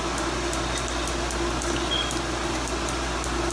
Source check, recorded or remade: recorded